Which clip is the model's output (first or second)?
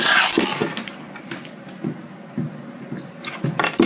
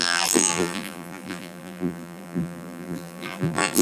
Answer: second